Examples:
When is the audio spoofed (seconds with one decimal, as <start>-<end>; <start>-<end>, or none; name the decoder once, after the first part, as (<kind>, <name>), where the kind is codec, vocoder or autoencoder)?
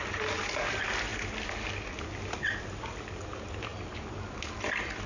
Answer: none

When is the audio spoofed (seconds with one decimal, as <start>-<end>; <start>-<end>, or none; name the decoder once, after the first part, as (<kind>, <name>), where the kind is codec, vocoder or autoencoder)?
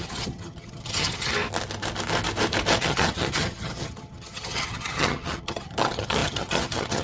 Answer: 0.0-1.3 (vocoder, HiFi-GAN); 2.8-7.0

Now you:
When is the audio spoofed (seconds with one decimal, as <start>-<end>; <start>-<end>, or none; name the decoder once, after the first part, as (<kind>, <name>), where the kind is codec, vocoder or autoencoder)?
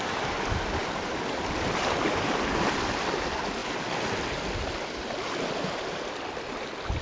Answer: none